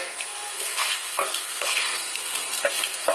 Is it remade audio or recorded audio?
remade